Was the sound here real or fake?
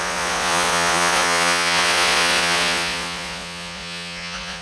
fake